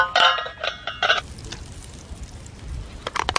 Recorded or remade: recorded